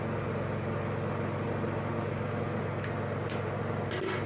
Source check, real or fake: real